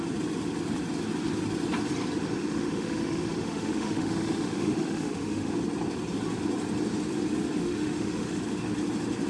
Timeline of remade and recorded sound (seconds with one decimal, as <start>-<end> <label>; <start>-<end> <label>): 0.0-2.4 recorded; 2.4-5.5 remade; 5.5-7.6 recorded; 7.6-8.4 remade; 8.4-9.3 recorded